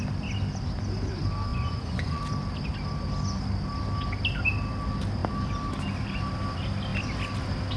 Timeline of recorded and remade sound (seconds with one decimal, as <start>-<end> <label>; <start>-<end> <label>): 0.0-1.5 recorded; 1.5-2.2 remade; 2.2-7.8 recorded